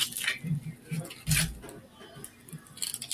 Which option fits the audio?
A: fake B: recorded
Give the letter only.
B